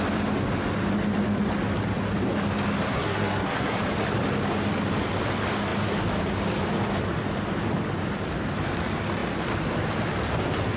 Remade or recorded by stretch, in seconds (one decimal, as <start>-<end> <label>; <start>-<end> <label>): 0.0-2.9 recorded; 2.9-3.8 remade; 3.8-10.8 recorded